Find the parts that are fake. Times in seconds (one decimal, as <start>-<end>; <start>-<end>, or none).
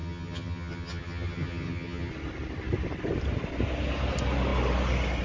0.0-2.1